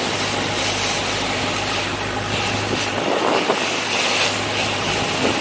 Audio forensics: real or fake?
real